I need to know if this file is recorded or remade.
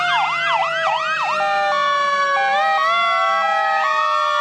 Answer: recorded